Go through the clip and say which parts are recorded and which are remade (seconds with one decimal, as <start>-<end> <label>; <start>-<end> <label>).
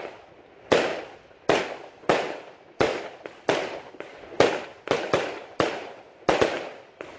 0.0-7.2 recorded